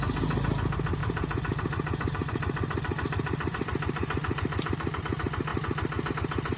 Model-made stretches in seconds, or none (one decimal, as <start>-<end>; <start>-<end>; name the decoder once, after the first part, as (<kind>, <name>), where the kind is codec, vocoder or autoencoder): 1.0-5.0 (vocoder, BigVGAN v2)